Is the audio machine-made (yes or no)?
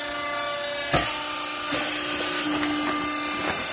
no